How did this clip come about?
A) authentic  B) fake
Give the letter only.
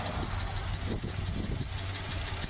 A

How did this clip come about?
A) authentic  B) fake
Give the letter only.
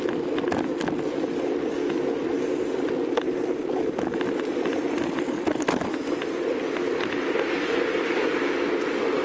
A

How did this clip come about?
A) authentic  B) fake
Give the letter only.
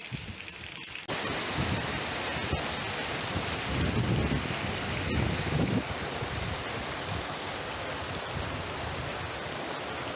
A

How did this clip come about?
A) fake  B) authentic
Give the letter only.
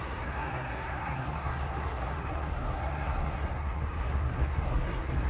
A